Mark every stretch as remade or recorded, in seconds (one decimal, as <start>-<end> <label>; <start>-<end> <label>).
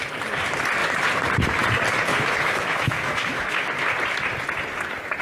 0.0-2.1 recorded; 2.1-3.7 remade; 3.7-5.2 recorded